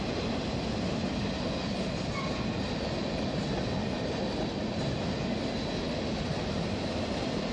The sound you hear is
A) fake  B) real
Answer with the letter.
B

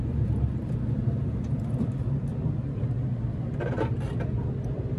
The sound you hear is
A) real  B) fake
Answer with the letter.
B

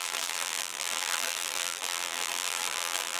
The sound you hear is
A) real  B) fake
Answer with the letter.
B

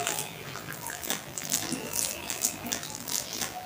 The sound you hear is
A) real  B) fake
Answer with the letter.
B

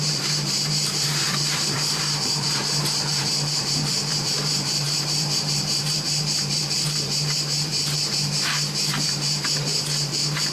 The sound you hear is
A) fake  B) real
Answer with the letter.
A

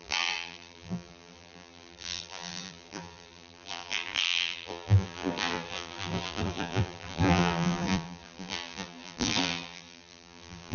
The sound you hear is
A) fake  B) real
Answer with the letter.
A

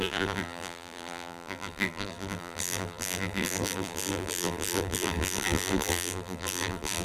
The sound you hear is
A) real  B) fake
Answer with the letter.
B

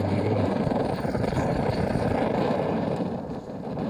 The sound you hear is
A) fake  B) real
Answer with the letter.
A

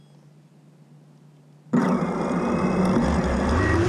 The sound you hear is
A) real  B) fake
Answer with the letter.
A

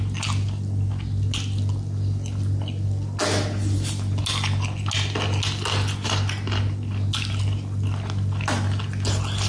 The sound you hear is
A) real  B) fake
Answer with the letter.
A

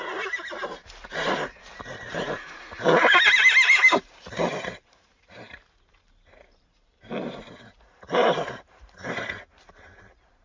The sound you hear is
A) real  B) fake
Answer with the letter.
B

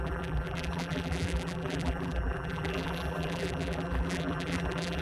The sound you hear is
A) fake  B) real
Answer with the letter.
A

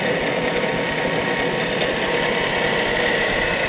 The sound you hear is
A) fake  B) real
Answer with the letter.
B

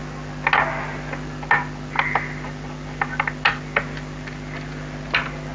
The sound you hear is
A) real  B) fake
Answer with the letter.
A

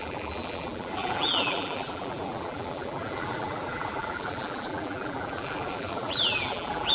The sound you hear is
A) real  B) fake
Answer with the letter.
B